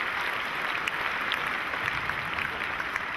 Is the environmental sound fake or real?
real